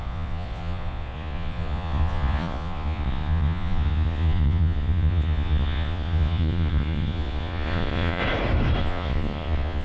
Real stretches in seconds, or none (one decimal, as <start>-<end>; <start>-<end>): 8.2-8.8